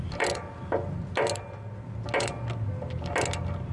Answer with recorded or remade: recorded